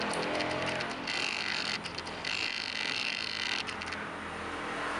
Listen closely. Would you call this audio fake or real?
real